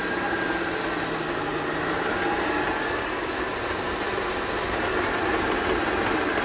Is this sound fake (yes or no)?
no